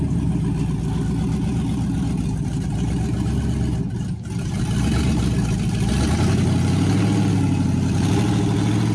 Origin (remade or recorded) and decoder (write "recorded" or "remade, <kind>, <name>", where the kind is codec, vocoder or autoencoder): recorded